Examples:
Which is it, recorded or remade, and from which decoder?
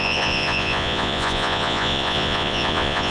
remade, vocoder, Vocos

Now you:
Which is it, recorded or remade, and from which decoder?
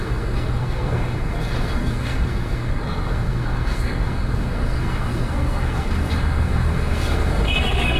remade, codec, SNAC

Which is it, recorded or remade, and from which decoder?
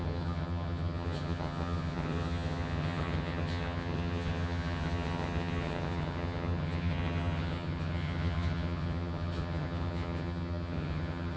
remade, vocoder, HiFi-GAN